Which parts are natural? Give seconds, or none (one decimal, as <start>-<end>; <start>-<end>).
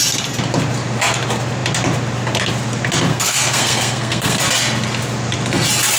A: 0.0-3.1; 4.4-6.0